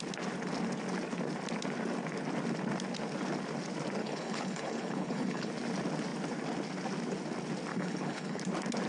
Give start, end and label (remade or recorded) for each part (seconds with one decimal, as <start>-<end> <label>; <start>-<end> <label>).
0.0-4.0 recorded; 4.0-5.5 remade; 5.5-7.7 recorded; 7.7-8.4 remade; 8.4-8.9 recorded